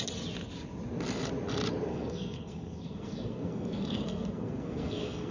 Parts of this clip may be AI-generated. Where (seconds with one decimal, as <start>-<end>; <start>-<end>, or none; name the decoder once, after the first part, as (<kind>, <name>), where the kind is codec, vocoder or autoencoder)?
1.9-5.3 (codec, SNAC)